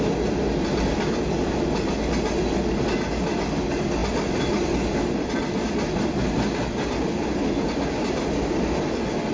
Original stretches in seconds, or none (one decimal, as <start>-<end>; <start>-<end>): 0.0-9.3